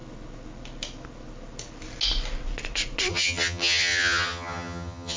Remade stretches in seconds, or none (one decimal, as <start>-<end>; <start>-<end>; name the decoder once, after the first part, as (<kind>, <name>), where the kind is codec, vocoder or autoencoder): 3.1-5.2 (vocoder, HiFi-GAN)